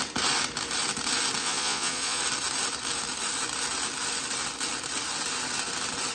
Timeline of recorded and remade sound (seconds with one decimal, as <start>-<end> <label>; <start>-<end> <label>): 0.0-1.4 recorded; 1.4-2.2 remade; 2.2-6.1 recorded